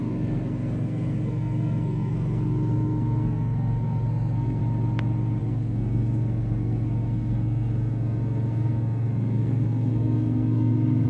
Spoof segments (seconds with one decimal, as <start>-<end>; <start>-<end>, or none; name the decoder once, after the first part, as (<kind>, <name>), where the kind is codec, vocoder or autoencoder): 0.0-4.6 (codec, SNAC); 5.4-11.1